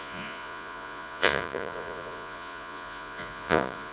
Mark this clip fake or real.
fake